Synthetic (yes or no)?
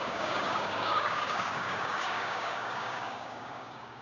yes